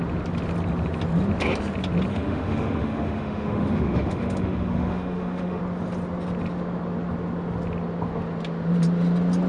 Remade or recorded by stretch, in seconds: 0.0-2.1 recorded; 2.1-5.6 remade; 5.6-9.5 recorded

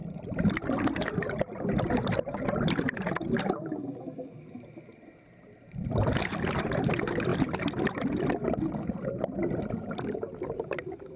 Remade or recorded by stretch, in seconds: 0.0-11.2 recorded

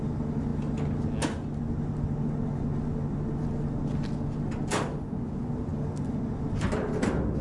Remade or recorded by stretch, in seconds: 0.0-7.4 recorded